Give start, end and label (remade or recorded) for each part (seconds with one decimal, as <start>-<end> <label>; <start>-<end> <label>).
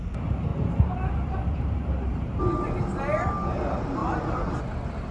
0.0-0.5 recorded; 0.5-2.4 remade; 2.4-5.1 recorded